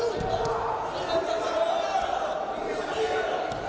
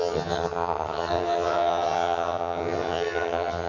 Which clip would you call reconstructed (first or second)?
second